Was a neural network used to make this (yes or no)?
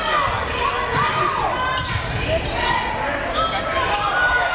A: no